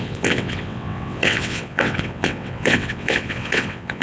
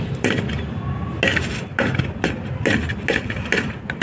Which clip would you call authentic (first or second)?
second